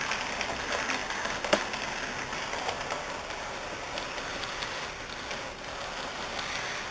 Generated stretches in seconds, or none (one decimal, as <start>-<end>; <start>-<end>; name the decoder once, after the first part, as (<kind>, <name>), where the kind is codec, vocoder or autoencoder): none